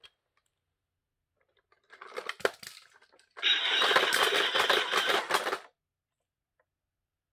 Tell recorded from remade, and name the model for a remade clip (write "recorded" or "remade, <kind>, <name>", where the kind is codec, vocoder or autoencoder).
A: recorded